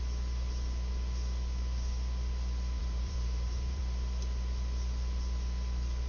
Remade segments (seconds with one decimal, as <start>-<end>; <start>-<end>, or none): 2.8-3.8